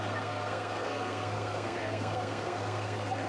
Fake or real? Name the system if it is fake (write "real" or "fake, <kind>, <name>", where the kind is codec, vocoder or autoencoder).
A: fake, codec, SNAC